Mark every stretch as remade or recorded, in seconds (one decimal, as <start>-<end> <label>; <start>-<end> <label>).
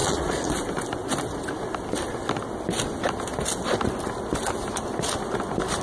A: 0.0-0.5 remade; 0.5-5.8 recorded